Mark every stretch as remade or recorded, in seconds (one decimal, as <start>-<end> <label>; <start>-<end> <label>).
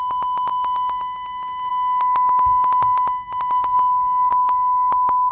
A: 0.0-4.3 recorded; 4.3-5.3 remade